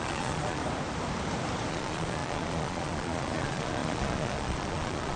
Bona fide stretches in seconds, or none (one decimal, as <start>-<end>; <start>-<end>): 0.6-1.7